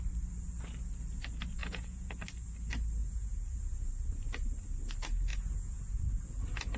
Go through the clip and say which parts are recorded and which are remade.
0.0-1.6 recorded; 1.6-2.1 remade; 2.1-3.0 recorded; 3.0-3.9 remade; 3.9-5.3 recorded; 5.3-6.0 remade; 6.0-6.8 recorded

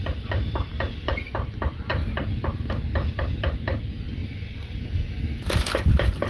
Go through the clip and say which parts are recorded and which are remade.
0.0-6.3 recorded

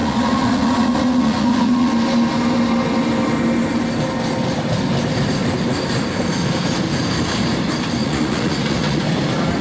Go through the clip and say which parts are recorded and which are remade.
0.0-1.9 remade; 1.9-8.0 recorded; 8.0-9.0 remade; 9.0-9.6 recorded

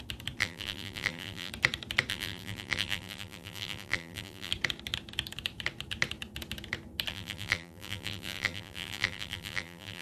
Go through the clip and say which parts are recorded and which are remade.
0.0-0.4 recorded; 0.4-1.5 remade; 1.5-2.1 recorded; 2.1-4.5 remade; 4.5-7.1 recorded; 7.1-10.0 remade

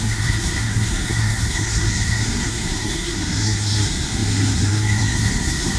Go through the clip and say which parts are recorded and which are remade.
0.0-5.8 remade

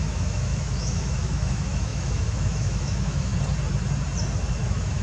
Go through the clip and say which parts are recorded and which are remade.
0.0-3.3 remade; 3.3-4.5 recorded; 4.5-5.0 remade